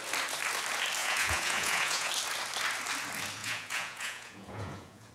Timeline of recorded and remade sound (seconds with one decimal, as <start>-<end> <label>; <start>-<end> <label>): 0.0-1.0 recorded; 1.0-2.1 remade; 2.1-3.4 recorded; 3.4-5.1 remade